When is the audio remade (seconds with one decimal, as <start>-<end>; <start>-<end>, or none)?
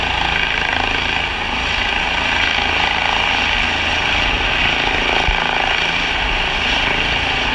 none